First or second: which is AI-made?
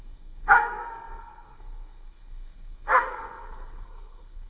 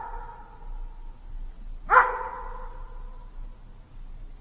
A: first